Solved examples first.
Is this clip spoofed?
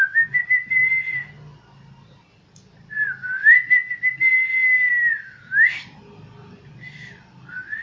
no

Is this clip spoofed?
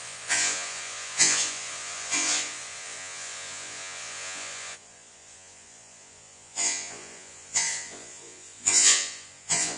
yes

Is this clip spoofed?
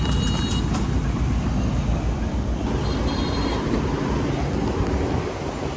no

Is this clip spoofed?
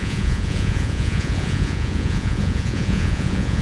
yes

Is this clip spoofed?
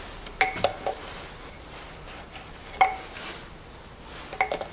no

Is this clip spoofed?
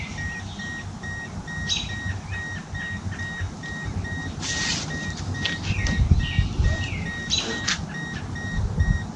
no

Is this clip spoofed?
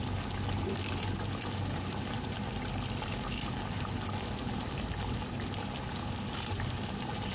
no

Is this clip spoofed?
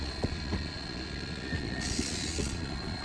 yes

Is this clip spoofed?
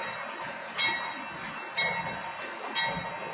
no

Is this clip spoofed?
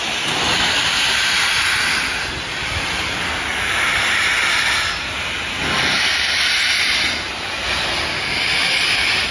no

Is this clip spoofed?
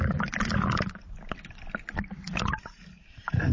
no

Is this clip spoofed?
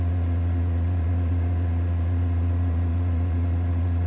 yes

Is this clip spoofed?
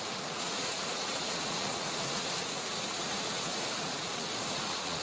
yes